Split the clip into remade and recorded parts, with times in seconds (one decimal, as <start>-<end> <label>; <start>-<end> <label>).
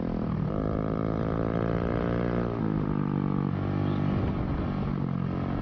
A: 0.0-5.6 recorded